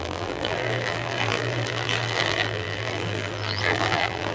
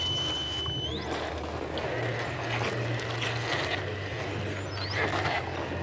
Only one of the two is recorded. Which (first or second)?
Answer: second